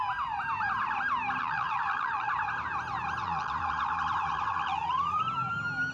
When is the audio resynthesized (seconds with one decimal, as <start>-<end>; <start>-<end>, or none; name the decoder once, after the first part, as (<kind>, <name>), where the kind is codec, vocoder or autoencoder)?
1.4-2.3 (vocoder, Vocos); 3.2-5.2